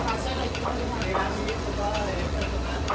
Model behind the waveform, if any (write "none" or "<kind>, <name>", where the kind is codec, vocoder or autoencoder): vocoder, Vocos